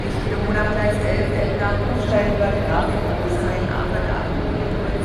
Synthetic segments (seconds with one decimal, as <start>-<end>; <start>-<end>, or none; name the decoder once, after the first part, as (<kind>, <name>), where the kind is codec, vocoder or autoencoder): 0.4-0.9 (vocoder, Vocos)